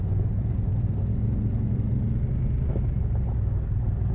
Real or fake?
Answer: real